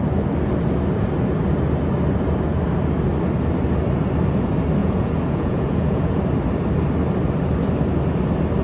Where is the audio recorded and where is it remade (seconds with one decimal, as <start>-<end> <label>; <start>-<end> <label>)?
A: 0.0-4.8 recorded; 4.8-6.2 remade; 6.2-8.6 recorded